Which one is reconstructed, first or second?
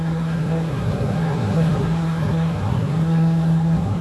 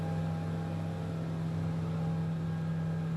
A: first